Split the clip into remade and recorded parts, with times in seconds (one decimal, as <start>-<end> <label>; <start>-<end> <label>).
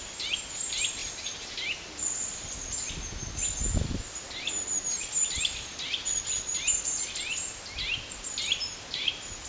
0.0-9.5 recorded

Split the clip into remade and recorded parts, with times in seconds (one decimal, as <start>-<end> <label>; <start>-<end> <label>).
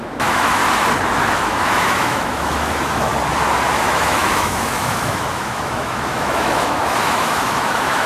0.0-0.6 remade; 0.6-1.3 recorded; 1.3-3.1 remade; 3.1-3.8 recorded; 3.8-8.1 remade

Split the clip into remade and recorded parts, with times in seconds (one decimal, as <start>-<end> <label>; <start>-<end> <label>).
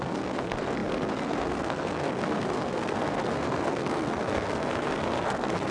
0.0-5.7 remade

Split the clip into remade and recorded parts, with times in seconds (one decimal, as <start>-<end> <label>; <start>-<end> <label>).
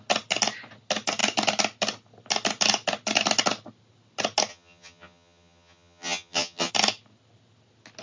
0.0-4.5 recorded; 4.5-6.7 remade; 6.7-8.0 recorded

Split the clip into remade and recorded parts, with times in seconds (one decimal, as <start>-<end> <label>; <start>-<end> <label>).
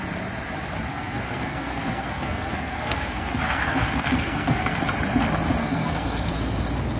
0.0-0.9 recorded; 0.9-4.8 remade; 4.8-5.6 recorded; 5.6-6.3 remade; 6.3-7.0 recorded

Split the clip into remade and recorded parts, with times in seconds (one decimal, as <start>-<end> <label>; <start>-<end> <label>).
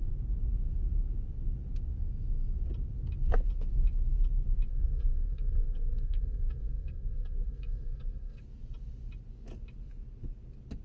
0.0-4.7 recorded; 4.7-8.4 remade; 8.4-10.8 recorded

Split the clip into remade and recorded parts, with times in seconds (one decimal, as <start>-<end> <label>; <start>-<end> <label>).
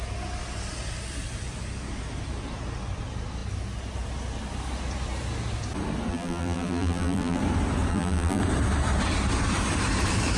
0.0-6.1 recorded; 6.1-7.4 remade; 7.4-7.9 recorded; 7.9-8.4 remade; 8.4-10.4 recorded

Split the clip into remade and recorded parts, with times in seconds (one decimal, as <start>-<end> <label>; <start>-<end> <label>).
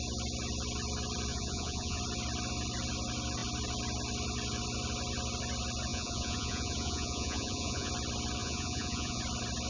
0.0-1.3 recorded; 1.3-2.0 remade; 2.0-5.9 recorded; 5.9-7.9 remade; 7.9-8.4 recorded; 8.4-9.2 remade; 9.2-9.7 recorded